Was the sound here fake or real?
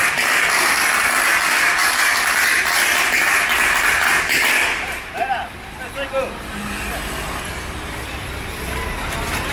real